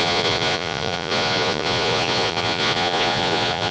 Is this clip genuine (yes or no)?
no